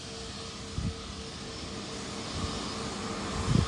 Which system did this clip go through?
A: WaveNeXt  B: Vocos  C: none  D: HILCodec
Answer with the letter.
C